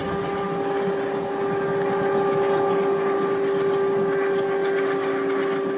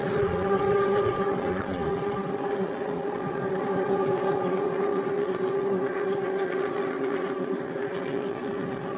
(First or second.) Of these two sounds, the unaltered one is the first